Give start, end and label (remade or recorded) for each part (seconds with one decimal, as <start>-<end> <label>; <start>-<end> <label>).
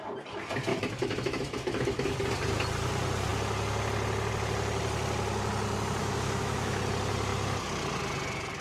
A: 0.0-0.7 recorded; 0.7-2.1 remade; 2.1-6.0 recorded; 6.0-6.8 remade; 6.8-8.6 recorded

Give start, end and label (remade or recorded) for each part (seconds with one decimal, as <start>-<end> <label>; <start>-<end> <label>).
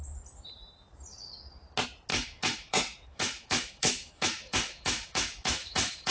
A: 0.0-2.1 recorded; 2.1-6.1 remade